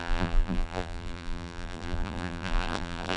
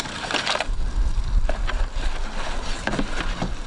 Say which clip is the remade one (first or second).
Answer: first